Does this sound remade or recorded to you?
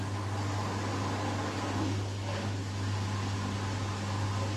recorded